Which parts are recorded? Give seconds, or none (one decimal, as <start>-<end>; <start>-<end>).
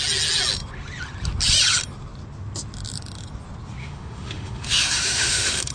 0.0-3.8